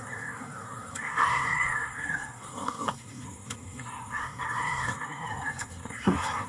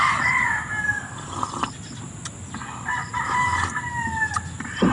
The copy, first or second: first